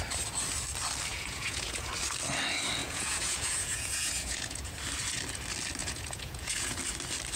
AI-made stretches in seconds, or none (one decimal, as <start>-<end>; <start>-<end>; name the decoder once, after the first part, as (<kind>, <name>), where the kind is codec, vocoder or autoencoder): 1.1-1.9 (vocoder, Vocos); 2.8-4.7; 5.8-6.8